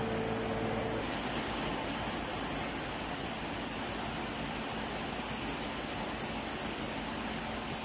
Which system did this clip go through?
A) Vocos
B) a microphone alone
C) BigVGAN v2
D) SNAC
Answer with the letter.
B